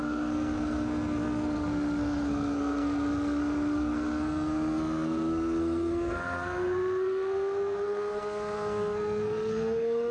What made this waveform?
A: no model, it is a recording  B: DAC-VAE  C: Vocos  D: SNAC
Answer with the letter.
D